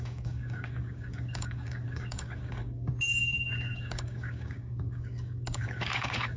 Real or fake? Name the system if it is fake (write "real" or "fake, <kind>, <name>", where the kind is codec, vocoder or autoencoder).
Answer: fake, codec, DAC